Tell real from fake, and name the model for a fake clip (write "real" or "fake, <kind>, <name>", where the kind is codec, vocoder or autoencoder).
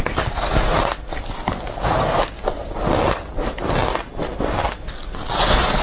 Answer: real